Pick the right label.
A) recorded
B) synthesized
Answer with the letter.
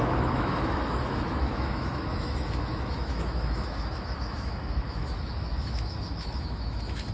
B